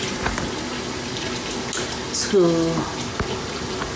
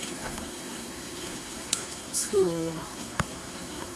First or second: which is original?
first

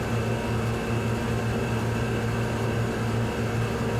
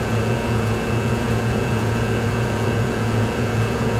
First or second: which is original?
first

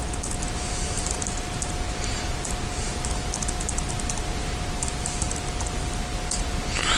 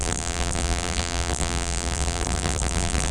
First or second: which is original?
first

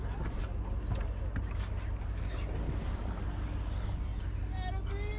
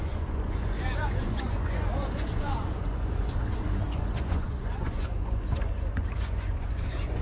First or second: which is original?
first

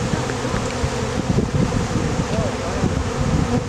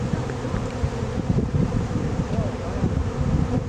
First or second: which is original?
first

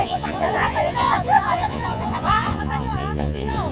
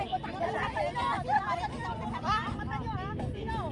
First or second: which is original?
second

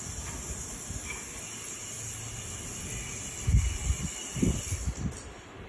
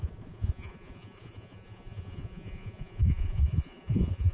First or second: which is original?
first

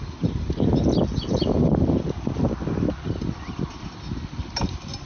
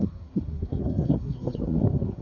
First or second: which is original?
first